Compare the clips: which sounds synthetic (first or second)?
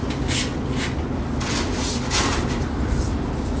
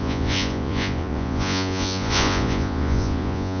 second